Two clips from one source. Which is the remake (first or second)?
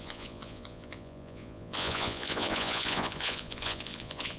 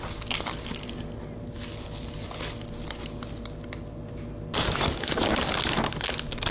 first